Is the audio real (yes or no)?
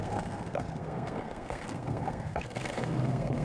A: no